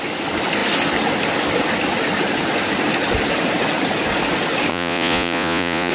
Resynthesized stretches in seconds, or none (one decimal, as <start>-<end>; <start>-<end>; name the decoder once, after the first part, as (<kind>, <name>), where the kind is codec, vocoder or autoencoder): 4.7-5.9 (vocoder, Vocos)